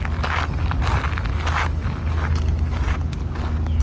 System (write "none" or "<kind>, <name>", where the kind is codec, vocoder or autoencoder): none